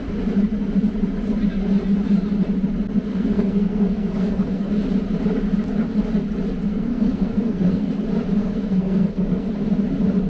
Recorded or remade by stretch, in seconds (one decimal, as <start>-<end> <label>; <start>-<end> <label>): 0.0-3.1 recorded; 3.1-4.7 remade; 4.7-6.7 recorded; 6.7-7.9 remade; 7.9-8.4 recorded; 8.4-9.5 remade; 9.5-10.3 recorded